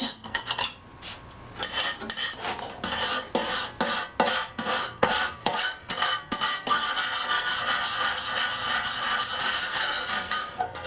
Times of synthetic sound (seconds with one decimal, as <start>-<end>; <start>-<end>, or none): 0.0-0.6; 4.3-7.5; 9.4-10.9